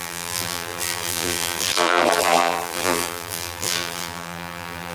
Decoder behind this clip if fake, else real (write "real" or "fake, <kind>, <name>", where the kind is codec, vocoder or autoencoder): fake, vocoder, BigVGAN v2